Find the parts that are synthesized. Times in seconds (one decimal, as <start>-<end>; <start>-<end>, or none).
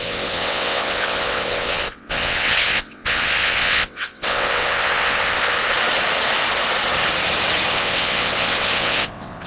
0.0-5.6; 7.7-9.5